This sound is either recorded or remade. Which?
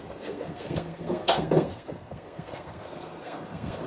remade